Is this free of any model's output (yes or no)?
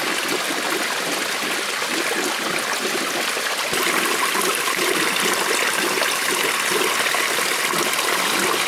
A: yes